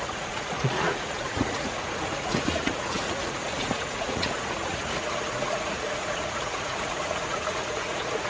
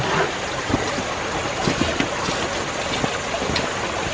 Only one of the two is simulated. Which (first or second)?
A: first